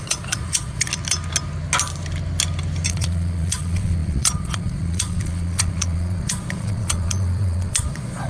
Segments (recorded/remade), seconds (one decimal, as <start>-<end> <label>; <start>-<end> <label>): 0.0-0.9 remade; 0.9-2.9 recorded; 2.9-8.3 remade